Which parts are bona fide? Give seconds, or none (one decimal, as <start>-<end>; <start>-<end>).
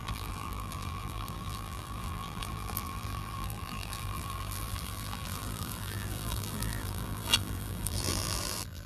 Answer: none